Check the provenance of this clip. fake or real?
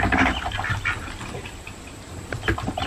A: real